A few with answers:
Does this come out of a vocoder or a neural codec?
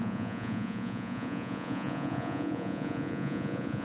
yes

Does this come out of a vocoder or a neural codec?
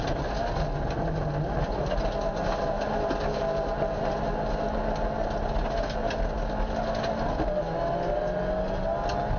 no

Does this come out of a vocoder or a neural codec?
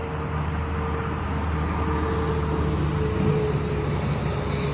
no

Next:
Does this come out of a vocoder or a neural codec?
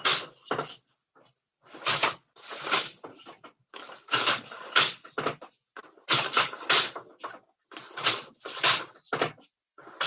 no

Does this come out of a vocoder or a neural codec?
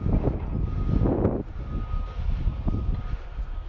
no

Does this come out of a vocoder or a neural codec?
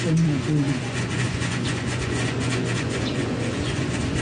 yes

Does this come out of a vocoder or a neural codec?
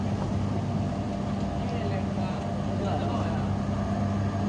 no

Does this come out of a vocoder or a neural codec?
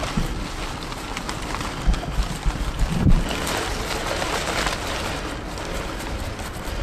no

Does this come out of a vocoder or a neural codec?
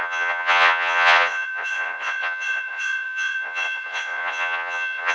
yes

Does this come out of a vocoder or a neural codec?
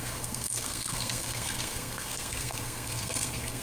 yes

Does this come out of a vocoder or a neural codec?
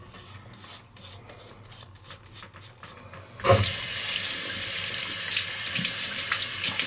no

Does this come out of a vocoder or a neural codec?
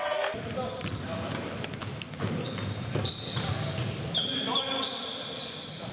yes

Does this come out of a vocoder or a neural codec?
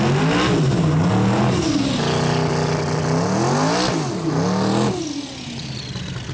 no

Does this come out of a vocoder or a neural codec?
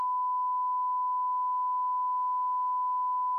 no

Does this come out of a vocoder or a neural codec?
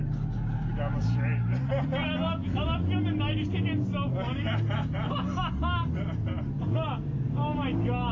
no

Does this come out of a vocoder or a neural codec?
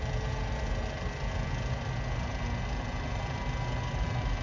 no